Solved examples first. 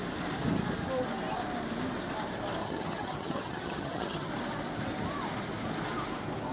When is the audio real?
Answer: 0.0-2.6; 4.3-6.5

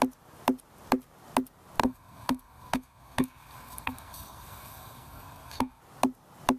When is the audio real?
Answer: 0.0-1.8; 5.8-6.6

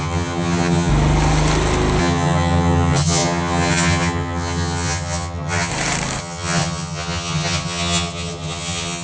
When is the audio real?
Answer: 0.9-2.0; 5.7-6.2